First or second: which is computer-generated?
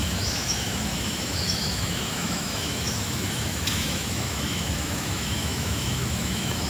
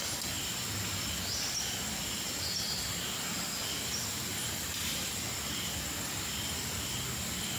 first